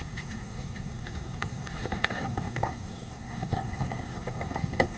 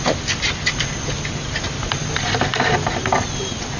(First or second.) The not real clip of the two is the first